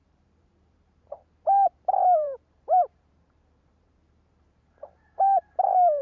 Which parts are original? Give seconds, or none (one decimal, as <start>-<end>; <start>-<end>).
none